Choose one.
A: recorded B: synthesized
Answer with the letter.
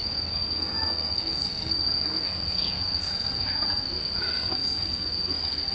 B